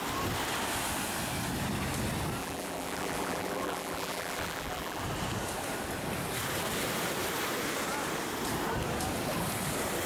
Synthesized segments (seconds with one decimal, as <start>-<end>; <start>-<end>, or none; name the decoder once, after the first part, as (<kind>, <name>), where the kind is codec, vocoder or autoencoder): 2.4-5.0 (vocoder, BigVGAN v2)